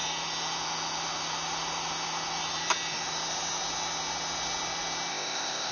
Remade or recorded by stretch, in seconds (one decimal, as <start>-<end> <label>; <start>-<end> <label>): 0.0-5.1 recorded; 5.1-5.7 remade